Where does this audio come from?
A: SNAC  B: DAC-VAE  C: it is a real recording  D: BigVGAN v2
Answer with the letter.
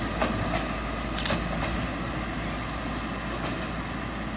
C